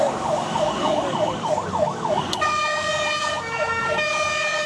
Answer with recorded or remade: remade